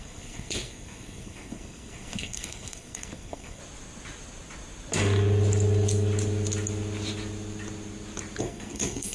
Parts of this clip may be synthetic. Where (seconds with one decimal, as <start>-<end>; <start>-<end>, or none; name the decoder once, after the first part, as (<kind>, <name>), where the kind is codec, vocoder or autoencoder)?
0.0-3.6 (codec, SNAC); 8.4-9.1